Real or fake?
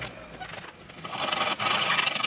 real